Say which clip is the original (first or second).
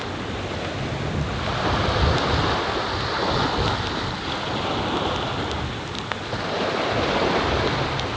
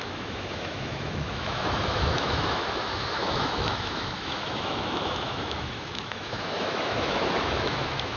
first